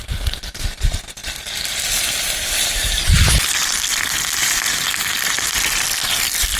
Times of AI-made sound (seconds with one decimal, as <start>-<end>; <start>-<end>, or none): none